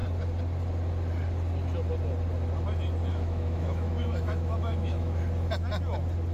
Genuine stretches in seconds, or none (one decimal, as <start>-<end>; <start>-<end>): 0.0-3.1; 5.2-6.3